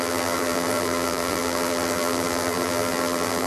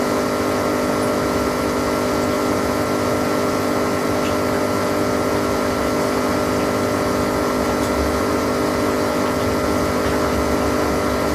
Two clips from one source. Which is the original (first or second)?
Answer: second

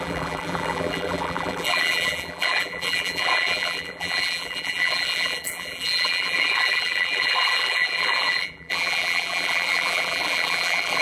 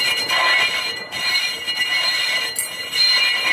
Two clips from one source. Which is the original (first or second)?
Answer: second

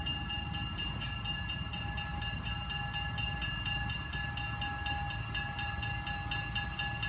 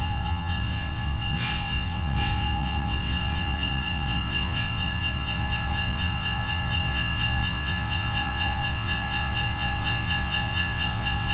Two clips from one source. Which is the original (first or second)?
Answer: first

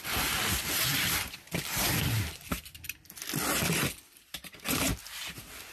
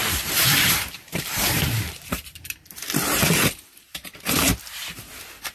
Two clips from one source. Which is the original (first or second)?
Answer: first